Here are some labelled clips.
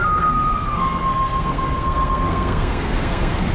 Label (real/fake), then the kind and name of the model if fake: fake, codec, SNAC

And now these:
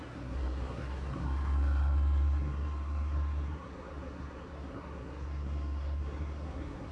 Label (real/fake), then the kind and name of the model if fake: fake, codec, SNAC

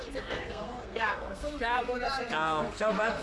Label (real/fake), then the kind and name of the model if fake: fake, codec, SNAC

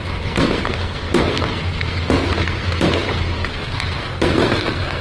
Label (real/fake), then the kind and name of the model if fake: fake, codec, SNAC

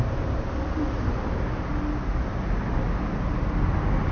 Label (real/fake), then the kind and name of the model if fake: real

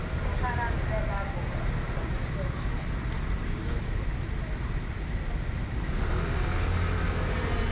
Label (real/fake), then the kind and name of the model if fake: real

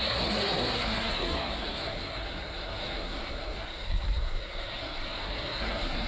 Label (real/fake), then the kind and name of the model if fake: fake, codec, SNAC